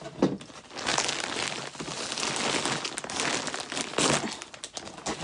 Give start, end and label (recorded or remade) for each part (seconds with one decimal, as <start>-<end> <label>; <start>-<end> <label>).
0.0-5.2 recorded